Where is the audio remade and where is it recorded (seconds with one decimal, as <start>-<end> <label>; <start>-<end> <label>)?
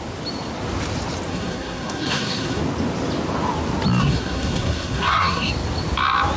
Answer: 0.0-1.3 recorded; 1.3-2.6 remade; 2.6-4.0 recorded; 4.0-5.5 remade; 5.5-6.4 recorded